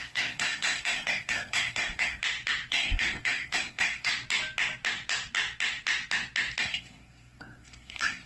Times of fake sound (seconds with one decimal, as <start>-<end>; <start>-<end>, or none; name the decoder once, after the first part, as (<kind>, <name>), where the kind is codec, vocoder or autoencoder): 0.0-2.2 (codec, SNAC); 2.7-4.1; 6.6-8.3